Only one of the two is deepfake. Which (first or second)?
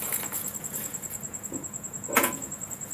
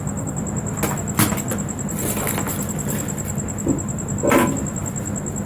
first